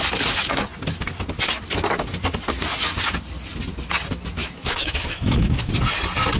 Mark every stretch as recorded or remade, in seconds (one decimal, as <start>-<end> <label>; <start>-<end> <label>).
0.0-4.4 recorded; 4.4-5.7 remade; 5.7-6.4 recorded